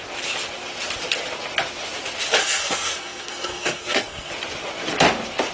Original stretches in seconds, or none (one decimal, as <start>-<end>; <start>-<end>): 0.0-2.4; 4.3-5.5